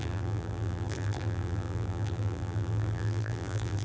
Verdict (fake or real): fake